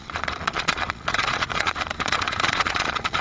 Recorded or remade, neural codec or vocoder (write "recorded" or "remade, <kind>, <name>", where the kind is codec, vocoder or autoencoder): remade, vocoder, Vocos